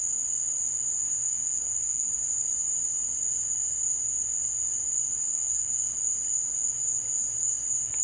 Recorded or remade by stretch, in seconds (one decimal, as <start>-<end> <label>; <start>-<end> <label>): 0.0-1.2 recorded; 1.2-2.1 remade; 2.1-5.2 recorded; 5.2-5.7 remade; 5.7-8.0 recorded